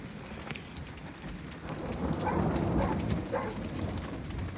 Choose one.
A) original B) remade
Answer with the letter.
A